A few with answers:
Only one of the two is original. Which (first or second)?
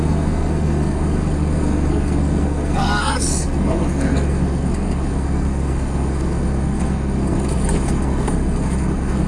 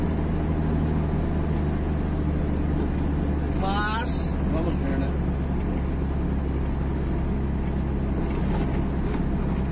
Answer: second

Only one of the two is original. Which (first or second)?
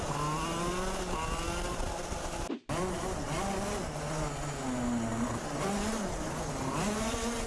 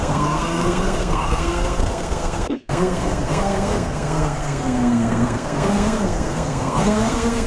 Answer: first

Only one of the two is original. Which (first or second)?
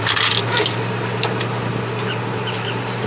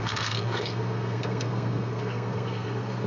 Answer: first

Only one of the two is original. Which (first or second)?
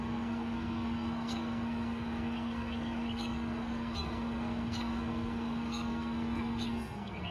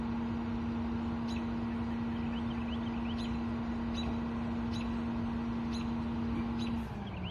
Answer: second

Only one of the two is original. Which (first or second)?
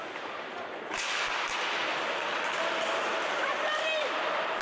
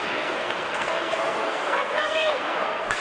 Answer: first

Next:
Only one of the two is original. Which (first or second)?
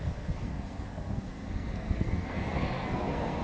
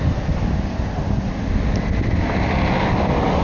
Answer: second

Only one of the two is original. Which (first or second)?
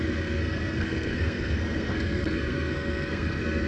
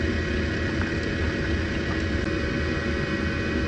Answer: second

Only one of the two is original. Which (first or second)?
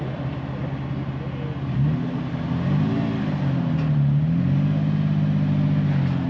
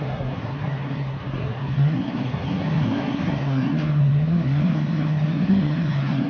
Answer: first